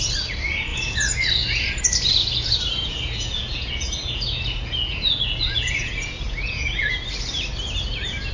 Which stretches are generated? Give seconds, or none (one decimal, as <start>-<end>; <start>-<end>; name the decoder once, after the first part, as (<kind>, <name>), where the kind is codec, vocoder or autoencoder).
0.7-1.8 (vocoder, Vocos); 2.2-6.9